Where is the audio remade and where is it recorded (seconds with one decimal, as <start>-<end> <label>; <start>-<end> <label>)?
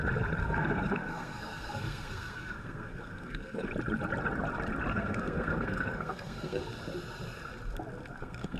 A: 0.0-0.4 recorded; 0.4-3.7 remade; 3.7-4.9 recorded; 4.9-6.6 remade; 6.6-8.1 recorded; 8.1-8.6 remade